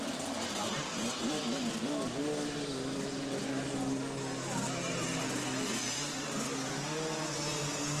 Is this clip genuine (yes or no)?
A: yes